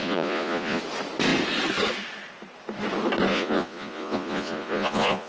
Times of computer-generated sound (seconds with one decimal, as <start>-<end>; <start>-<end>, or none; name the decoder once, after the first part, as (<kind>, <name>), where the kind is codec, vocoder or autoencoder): 0.0-0.8 (vocoder, Vocos); 3.3-5.3